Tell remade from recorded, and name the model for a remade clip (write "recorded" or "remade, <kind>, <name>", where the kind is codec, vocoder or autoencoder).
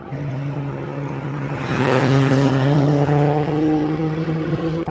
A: remade, vocoder, HiFi-GAN